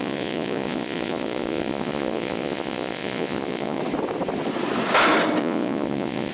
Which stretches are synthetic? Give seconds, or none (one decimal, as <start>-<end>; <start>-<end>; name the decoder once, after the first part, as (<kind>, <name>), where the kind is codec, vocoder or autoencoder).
0.0-3.8 (vocoder, Vocos); 5.4-6.3